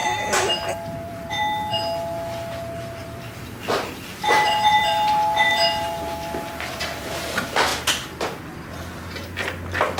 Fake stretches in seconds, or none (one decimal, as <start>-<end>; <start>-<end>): 0.0-1.3; 3.0-7.2